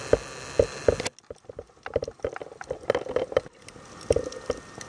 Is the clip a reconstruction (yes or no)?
no